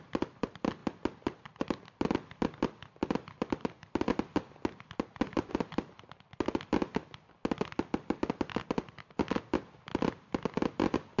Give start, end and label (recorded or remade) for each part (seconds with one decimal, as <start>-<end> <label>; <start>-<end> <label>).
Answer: 0.0-11.2 recorded